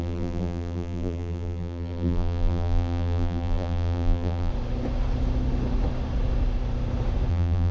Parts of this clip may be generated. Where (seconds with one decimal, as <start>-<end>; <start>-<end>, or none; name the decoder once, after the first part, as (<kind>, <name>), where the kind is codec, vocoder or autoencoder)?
0.0-4.5 (vocoder, BigVGAN v2); 7.3-7.7